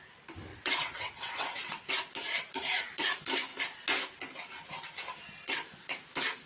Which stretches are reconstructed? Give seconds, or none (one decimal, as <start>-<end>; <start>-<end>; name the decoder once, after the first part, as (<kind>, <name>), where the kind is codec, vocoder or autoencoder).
0.5-1.9 (vocoder, WaveNeXt)